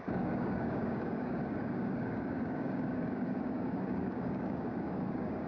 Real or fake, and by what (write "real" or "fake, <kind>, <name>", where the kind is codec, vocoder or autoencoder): fake, codec, DAC